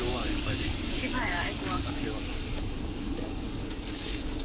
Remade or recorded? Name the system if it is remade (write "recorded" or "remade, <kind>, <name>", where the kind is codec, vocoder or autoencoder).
remade, codec, DAC